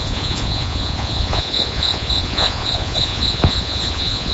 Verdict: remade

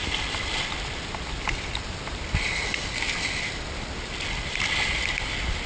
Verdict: recorded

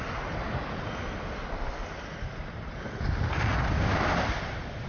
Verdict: recorded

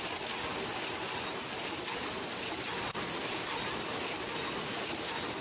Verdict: recorded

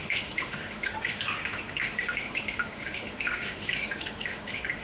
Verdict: remade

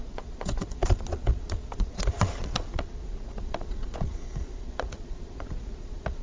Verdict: remade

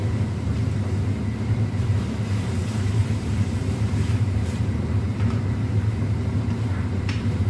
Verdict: remade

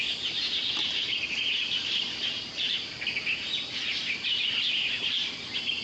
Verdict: recorded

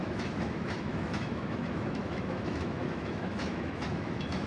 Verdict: remade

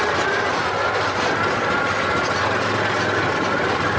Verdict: recorded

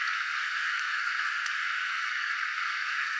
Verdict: remade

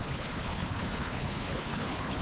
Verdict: remade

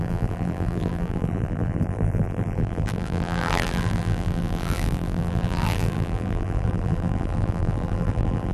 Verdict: remade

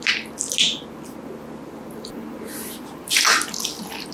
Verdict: recorded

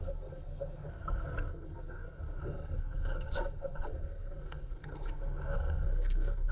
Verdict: remade